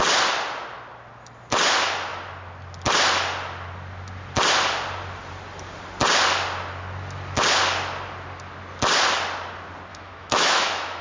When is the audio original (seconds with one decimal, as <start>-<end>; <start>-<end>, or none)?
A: 0.0-9.9